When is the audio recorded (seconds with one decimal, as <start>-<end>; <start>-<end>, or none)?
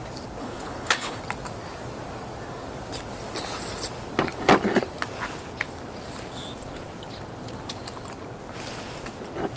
0.0-0.4; 1.2-9.6